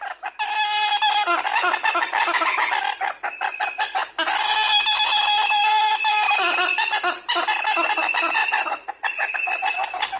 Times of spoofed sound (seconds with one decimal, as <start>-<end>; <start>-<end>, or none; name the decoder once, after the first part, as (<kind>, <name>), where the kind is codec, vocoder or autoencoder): 8.4-9.3 (vocoder, Vocos)